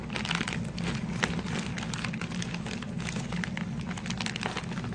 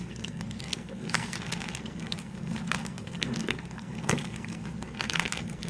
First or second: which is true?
first